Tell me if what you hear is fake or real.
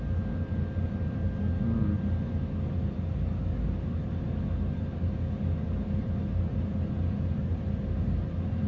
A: real